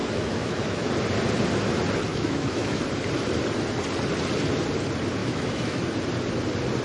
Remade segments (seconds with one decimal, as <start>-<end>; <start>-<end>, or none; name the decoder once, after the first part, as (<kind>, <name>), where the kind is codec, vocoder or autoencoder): 0.0-0.9 (autoencoder, DAC-VAE); 2.1-2.8; 5.2-5.8